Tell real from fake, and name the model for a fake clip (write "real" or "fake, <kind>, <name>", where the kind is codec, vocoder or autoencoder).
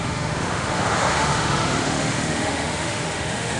fake, autoencoder, DAC-VAE